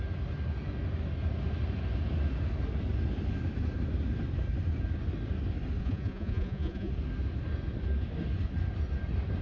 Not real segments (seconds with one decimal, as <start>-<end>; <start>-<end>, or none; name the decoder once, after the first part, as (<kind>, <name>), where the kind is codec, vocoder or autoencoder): 5.8-6.9 (vocoder, Vocos)

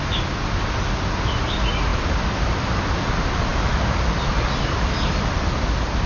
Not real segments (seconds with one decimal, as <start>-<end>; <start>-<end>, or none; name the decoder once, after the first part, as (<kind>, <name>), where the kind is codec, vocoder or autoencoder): 1.9-2.7 (vocoder, BigVGAN v2)

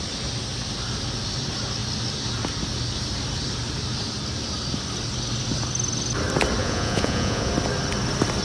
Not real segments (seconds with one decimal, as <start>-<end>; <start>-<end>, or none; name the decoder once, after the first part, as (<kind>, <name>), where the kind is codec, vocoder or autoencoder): 6.6-7.5 (vocoder, Vocos)

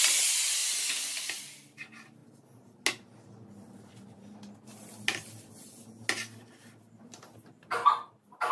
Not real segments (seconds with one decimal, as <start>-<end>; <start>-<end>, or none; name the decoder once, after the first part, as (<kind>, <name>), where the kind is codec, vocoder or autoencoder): none